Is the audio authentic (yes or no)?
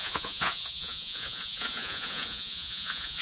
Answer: no